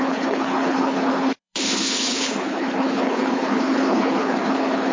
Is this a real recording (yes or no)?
no